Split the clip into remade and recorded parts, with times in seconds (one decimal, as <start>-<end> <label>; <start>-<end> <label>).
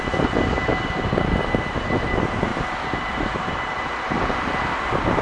0.0-5.2 recorded